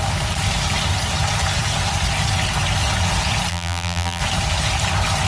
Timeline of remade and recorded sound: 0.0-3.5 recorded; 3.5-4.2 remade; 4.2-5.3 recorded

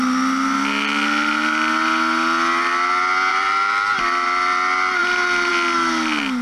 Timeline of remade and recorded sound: 0.0-3.3 recorded; 3.3-4.0 remade; 4.0-6.4 recorded

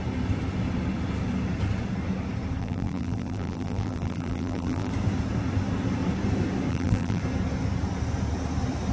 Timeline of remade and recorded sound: 0.0-2.6 recorded; 2.6-4.9 remade; 4.9-6.7 recorded; 6.7-7.2 remade; 7.2-8.9 recorded

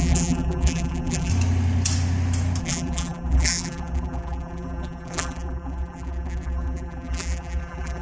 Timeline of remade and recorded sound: 0.0-1.3 remade; 1.3-2.6 recorded; 2.6-8.0 remade

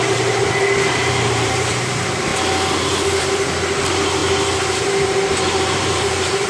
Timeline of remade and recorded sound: 0.0-0.4 remade; 0.4-1.1 recorded; 1.1-2.3 remade; 2.3-3.2 recorded; 3.2-4.2 remade; 4.2-4.8 recorded; 4.8-6.5 remade

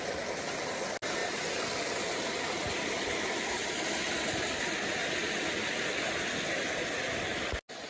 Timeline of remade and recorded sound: 0.0-3.6 recorded; 3.6-4.5 remade; 4.5-7.9 recorded